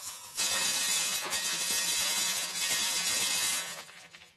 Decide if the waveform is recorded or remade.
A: remade